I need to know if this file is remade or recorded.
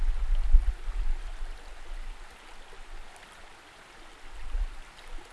recorded